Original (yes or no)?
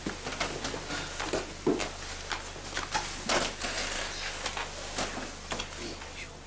yes